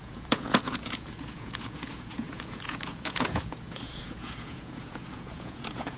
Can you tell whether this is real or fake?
fake